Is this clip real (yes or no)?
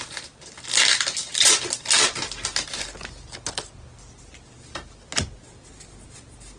yes